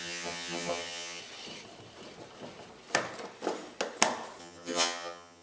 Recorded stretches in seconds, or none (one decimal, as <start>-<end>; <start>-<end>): 1.2-4.4